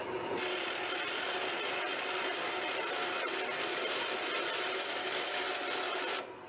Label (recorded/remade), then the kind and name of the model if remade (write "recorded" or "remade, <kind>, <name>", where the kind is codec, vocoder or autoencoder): recorded